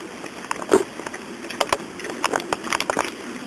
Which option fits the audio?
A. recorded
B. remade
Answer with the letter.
A